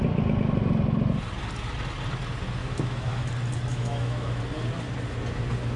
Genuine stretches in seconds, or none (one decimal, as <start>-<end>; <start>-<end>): 0.0-2.6; 3.3-3.7; 4.4-5.8